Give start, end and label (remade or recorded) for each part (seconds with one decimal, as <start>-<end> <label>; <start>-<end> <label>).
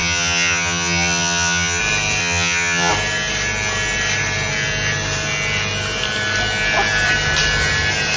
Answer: 0.0-1.8 remade; 1.8-2.2 recorded; 2.2-2.9 remade; 2.9-8.2 recorded